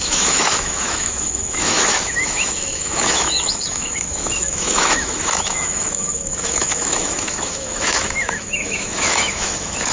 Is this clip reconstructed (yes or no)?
yes